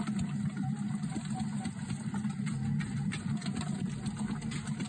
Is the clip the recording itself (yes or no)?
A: yes